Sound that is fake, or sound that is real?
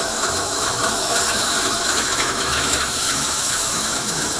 fake